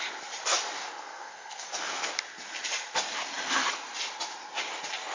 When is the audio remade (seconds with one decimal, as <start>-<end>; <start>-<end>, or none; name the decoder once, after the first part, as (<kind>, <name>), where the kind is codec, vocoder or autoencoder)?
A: 0.8-2.1 (codec, SNAC)